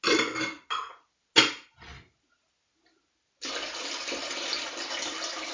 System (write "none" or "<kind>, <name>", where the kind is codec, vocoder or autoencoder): none